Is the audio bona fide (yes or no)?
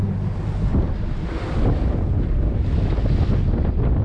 yes